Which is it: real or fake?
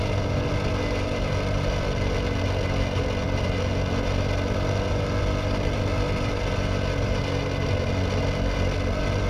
real